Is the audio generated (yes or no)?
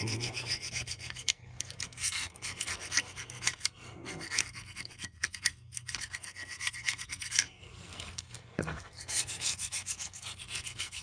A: yes